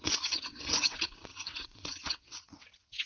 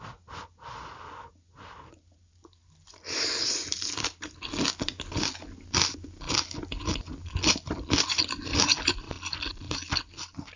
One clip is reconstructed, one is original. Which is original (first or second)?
second